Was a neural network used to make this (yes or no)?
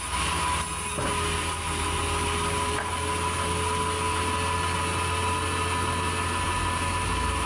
no